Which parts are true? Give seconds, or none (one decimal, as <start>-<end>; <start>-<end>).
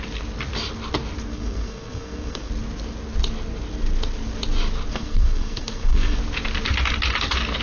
0.0-1.3; 2.5-4.9; 6.2-7.6